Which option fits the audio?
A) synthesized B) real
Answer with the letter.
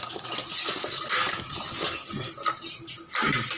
B